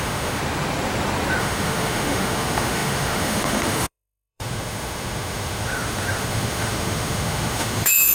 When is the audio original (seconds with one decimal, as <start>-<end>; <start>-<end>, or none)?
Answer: 0.4-1.4